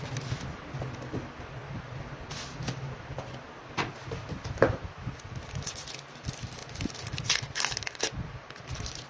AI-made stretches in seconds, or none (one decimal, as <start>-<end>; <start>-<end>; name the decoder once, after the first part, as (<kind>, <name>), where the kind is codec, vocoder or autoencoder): none